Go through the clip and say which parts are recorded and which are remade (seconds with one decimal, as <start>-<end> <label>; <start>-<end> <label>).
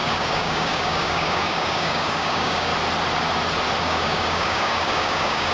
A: 0.0-2.7 remade; 2.7-3.8 recorded; 3.8-5.5 remade